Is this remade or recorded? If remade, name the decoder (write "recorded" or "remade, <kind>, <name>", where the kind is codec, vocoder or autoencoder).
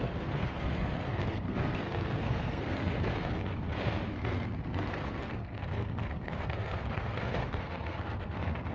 remade, codec, SNAC